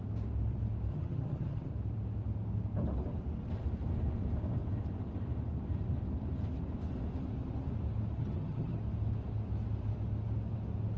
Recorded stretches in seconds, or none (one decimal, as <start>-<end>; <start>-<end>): 0.0-0.9; 1.7-8.2; 8.8-11.0